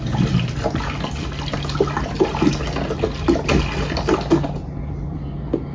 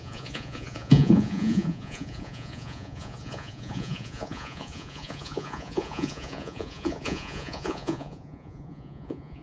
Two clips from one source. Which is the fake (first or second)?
second